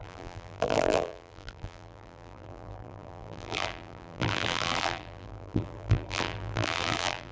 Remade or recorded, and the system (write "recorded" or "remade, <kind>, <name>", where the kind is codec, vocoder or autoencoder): remade, vocoder, BigVGAN v2